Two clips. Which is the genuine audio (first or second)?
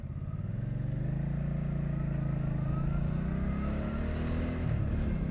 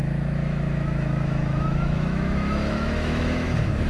first